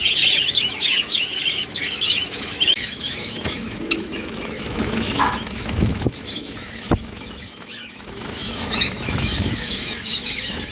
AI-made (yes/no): yes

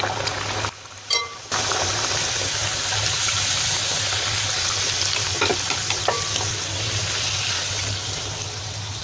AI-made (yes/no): no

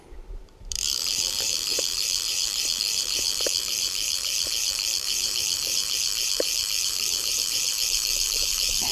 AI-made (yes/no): yes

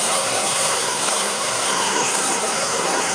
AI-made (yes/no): yes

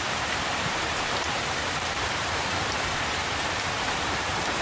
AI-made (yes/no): yes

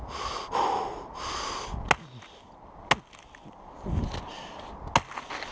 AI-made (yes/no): no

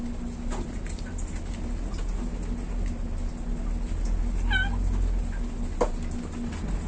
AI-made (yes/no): no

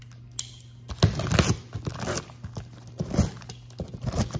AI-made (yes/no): no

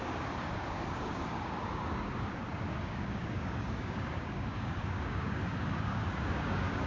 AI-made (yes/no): yes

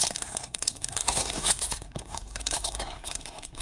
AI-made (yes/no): yes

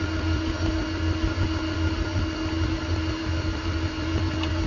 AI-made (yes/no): no